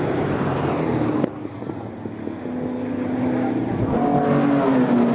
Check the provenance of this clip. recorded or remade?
recorded